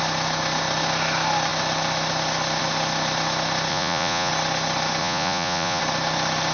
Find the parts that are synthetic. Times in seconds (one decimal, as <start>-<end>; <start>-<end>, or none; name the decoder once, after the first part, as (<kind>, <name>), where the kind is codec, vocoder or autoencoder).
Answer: 3.7-4.3 (vocoder, Vocos); 5.0-5.8